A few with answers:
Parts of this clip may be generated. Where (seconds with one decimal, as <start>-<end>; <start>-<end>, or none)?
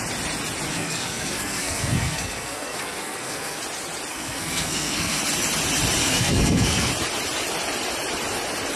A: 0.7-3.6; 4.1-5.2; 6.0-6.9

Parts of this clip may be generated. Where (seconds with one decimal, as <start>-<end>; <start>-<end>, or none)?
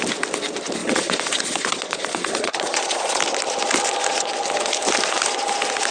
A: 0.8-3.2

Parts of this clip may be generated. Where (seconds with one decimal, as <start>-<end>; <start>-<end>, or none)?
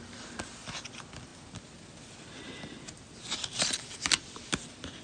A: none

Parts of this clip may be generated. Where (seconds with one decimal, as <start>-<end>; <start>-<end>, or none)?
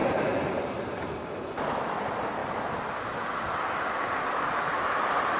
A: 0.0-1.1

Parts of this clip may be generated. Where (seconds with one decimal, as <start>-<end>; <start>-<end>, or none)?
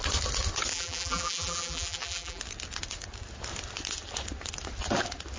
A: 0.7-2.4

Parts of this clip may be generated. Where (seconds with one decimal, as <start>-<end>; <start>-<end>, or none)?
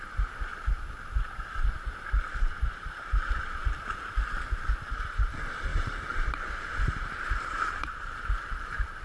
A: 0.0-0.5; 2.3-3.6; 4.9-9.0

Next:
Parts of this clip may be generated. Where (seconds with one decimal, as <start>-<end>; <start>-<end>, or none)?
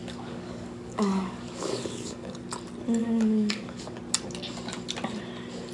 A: 0.0-2.4; 3.0-4.0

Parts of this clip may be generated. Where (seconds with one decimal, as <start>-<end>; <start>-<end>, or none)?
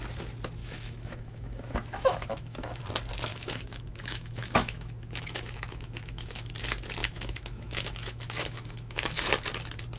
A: 0.6-2.8; 3.3-6.5; 7.0-9.3